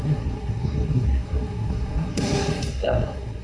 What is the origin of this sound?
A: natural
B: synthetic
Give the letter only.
B